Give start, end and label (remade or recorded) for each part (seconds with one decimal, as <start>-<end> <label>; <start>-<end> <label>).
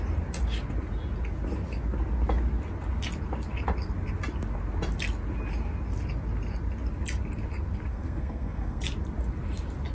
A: 0.0-7.9 recorded; 7.9-8.8 remade; 8.8-9.9 recorded